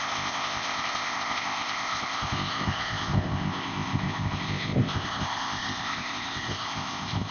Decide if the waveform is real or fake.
fake